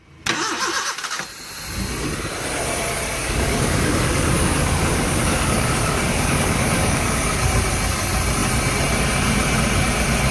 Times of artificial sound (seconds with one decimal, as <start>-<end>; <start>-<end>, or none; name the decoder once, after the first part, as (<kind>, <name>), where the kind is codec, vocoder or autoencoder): 3.2-7.5 (codec, DAC)

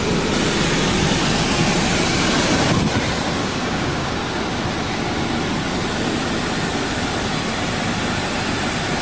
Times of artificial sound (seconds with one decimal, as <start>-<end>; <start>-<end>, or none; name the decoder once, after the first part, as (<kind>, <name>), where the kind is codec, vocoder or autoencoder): 3.4-4.2 (codec, DAC)